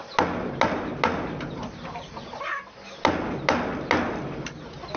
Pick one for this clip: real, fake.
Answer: real